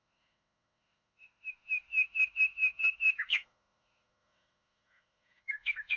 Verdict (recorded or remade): remade